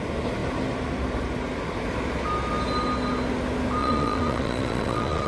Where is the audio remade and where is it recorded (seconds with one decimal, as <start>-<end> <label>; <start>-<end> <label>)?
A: 0.0-3.8 recorded; 3.8-5.3 remade